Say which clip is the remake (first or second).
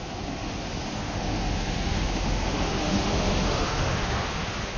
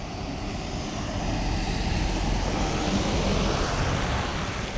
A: first